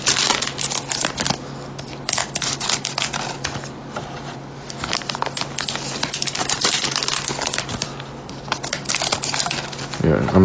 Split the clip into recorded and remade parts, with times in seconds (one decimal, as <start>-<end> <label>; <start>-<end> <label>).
0.0-10.4 recorded

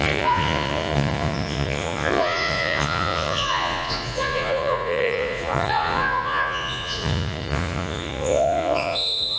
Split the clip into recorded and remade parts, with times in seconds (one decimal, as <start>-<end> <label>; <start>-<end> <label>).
0.0-9.4 remade

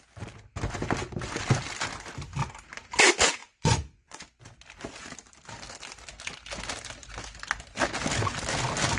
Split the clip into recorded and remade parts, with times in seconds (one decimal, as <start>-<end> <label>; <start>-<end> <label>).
0.0-3.4 recorded; 3.4-4.4 remade; 4.4-9.0 recorded

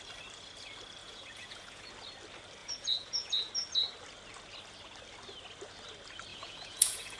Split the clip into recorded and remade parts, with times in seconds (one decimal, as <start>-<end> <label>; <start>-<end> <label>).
0.0-1.0 recorded; 1.0-1.9 remade; 1.9-2.6 recorded; 2.6-3.5 remade; 3.5-6.3 recorded; 6.3-7.2 remade